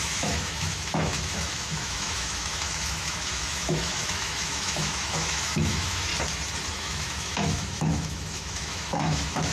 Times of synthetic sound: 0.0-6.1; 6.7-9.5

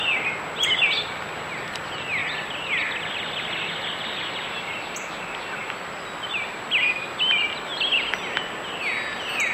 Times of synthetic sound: none

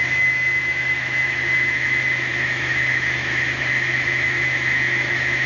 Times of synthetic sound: 0.0-5.5